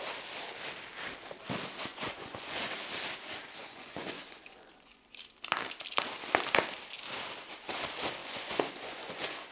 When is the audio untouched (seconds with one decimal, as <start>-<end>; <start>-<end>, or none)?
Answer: 0.0-1.9; 2.7-3.6; 5.0-8.2